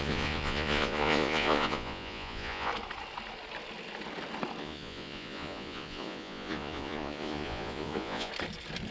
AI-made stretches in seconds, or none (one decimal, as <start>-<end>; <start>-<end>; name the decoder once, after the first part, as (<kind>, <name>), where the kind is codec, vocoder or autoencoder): 0.0-2.7 (vocoder, Vocos); 4.6-8.3